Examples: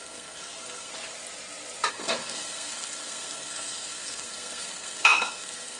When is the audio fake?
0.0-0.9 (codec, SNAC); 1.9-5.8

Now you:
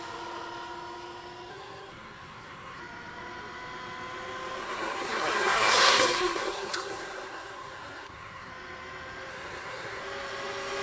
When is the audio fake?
1.5-2.8 (codec, SNAC); 4.6-8.5; 9.3-10.0

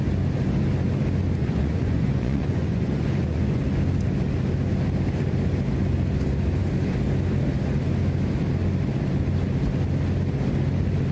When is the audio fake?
1.4-3.6 (vocoder, Vocos)

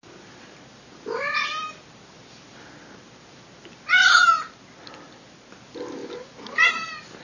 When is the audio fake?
none

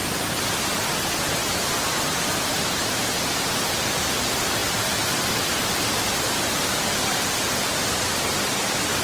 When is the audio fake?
none

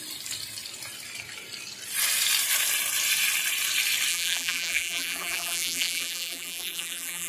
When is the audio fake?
4.1-7.3 (vocoder, BigVGAN v2)

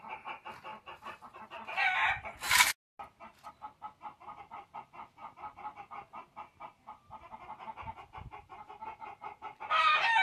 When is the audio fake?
none